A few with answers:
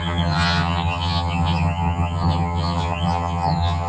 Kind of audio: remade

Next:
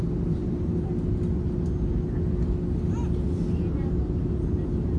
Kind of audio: recorded